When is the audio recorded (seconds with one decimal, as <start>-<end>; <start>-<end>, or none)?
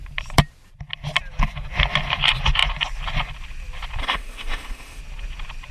0.0-4.0; 5.0-5.7